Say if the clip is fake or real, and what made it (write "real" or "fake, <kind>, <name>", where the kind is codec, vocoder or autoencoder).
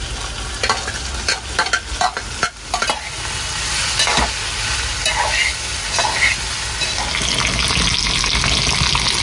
real